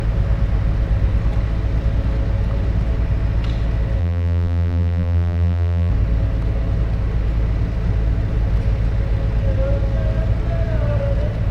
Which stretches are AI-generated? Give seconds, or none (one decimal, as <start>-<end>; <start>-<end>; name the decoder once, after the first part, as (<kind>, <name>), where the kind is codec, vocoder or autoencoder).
4.0-5.9 (vocoder, BigVGAN v2)